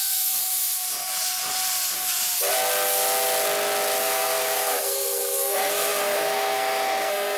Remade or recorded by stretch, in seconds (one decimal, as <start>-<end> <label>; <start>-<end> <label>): 0.0-0.4 remade; 0.4-4.0 recorded; 4.0-7.4 remade

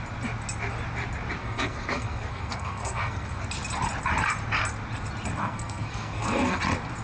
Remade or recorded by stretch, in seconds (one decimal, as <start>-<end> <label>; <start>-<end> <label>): 0.0-1.4 recorded; 1.4-3.4 remade; 3.4-5.4 recorded; 5.4-6.6 remade; 6.6-7.0 recorded